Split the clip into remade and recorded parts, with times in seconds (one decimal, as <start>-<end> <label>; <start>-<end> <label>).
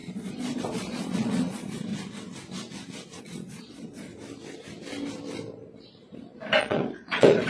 0.0-1.9 remade; 1.9-3.2 recorded; 3.2-4.1 remade; 4.1-6.6 recorded; 6.6-7.5 remade